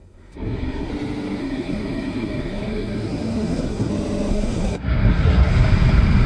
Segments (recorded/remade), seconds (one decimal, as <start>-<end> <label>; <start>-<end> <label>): 0.0-0.9 remade; 0.9-1.4 recorded; 1.4-3.9 remade; 3.9-4.3 recorded; 4.3-5.5 remade; 5.5-6.3 recorded